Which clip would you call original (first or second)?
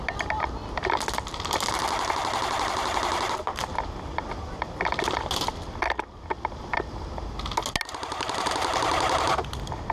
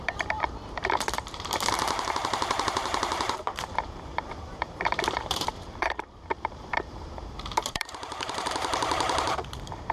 first